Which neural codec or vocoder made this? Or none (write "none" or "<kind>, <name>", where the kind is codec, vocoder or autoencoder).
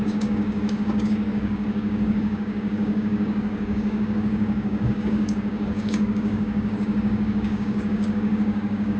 codec, DAC